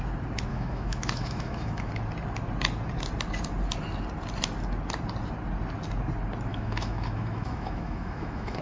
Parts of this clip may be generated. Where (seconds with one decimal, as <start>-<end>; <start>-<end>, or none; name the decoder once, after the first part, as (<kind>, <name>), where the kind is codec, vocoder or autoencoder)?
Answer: 0.5-1.9 (autoencoder, DAC-VAE); 6.5-8.6